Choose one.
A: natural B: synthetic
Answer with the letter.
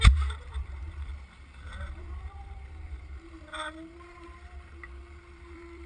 B